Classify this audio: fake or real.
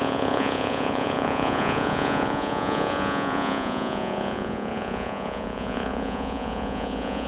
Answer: fake